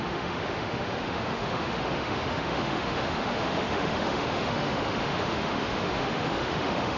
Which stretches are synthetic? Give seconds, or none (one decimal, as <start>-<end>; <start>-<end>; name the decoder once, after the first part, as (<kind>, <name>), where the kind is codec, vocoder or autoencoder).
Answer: 0.0-7.0 (autoencoder, DAC-VAE)